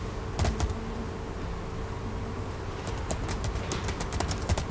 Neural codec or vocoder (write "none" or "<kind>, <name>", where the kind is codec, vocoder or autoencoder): none